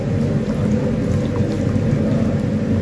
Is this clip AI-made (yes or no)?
no